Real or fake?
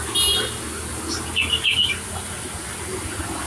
real